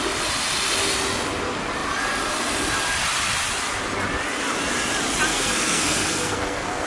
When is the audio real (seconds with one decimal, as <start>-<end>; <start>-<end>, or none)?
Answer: 0.0-5.3